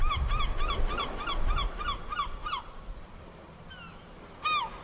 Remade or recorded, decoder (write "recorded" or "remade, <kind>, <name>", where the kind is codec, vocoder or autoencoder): recorded